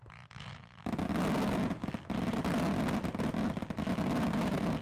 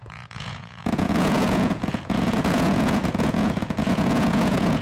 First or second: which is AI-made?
second